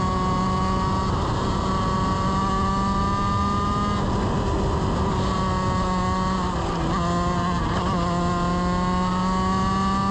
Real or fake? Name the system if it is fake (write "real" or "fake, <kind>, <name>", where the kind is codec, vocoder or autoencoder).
real